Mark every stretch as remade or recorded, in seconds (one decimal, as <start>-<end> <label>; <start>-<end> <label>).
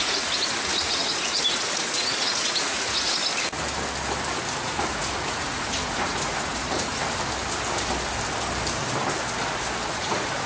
0.0-3.2 remade; 3.2-4.6 recorded; 4.6-6.9 remade; 6.9-10.0 recorded; 10.0-10.5 remade